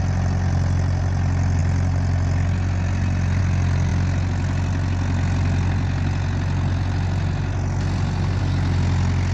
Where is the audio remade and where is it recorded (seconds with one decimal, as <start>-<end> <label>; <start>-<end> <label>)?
0.0-9.3 recorded